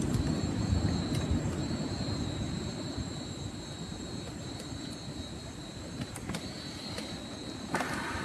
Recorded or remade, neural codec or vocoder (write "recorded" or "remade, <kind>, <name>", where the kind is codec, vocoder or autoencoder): remade, vocoder, BigVGAN v2